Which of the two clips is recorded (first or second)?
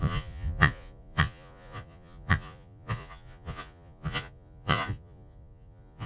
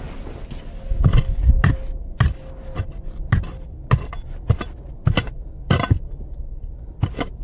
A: second